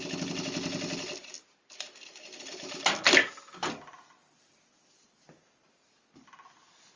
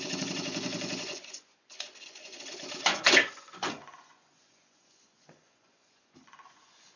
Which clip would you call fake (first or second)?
second